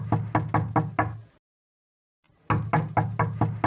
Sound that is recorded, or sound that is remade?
recorded